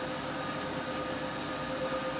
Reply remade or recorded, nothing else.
recorded